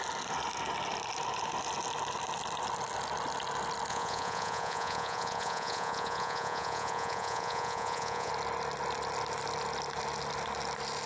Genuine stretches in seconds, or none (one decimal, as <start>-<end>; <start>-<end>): 0.0-3.9; 8.3-11.1